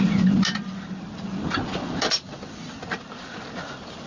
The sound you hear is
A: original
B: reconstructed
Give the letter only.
A